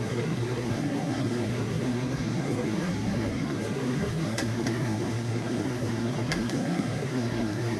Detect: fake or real fake